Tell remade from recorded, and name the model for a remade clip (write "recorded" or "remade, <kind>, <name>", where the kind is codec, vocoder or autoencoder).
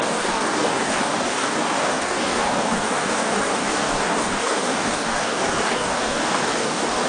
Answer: remade, codec, DAC